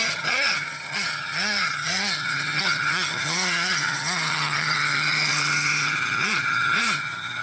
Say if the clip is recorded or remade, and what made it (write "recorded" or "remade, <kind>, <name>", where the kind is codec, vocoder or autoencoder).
remade, vocoder, HiFi-GAN